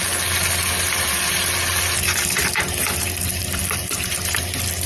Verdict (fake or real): real